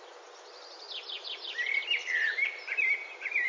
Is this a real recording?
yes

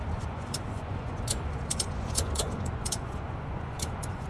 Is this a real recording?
no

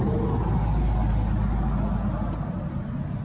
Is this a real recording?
yes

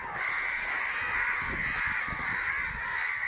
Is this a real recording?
yes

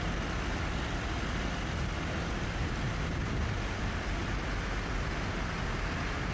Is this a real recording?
yes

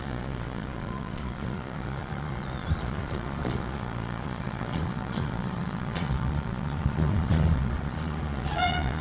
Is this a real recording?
no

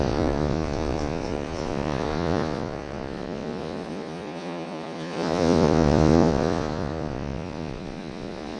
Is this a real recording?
no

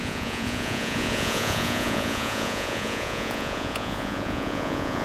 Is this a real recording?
no